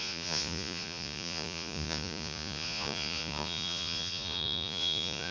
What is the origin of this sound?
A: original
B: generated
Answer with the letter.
B